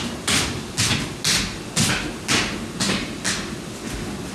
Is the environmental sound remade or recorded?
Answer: recorded